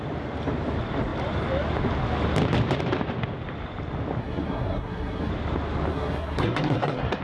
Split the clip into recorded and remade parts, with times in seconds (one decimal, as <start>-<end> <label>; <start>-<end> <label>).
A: 0.0-4.2 recorded; 4.2-5.3 remade; 5.3-5.9 recorded; 5.9-7.2 remade